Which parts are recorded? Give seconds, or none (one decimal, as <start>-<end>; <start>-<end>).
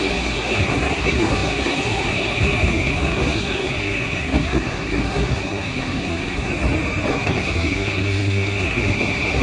6.5-7.1